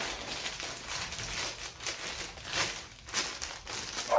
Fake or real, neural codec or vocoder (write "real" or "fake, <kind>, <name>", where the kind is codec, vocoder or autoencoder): real